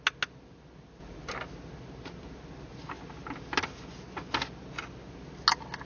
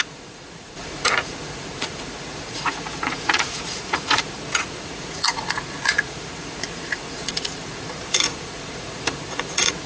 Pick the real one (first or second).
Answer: first